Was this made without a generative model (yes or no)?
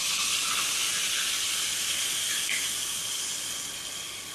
yes